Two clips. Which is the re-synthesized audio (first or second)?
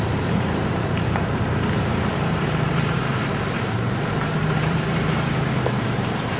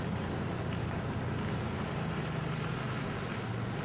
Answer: first